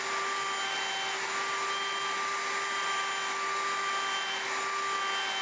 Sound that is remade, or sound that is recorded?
recorded